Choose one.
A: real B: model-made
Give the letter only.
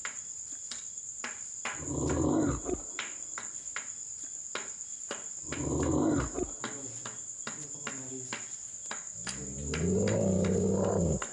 A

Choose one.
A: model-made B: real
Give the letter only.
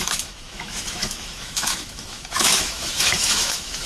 A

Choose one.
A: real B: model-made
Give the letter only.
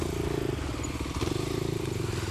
A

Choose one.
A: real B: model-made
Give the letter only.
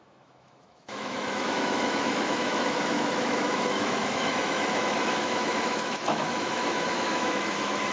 B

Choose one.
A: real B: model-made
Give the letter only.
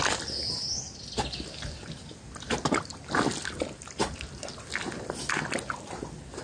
A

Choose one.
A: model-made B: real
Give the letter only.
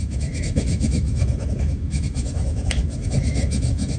A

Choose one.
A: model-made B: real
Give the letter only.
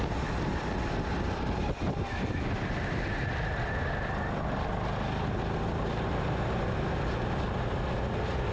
B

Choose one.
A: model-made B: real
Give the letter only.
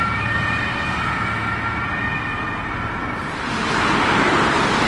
B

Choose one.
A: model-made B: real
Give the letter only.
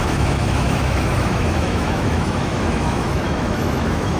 A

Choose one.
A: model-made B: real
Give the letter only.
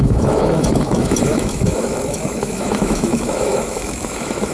A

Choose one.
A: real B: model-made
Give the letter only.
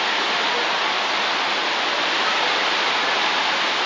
A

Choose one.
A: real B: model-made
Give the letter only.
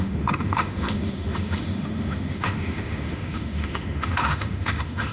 B